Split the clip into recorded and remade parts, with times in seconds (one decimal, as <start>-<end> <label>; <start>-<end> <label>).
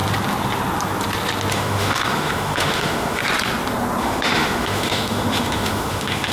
0.0-1.5 recorded; 1.5-3.2 remade; 3.2-4.0 recorded; 4.0-6.3 remade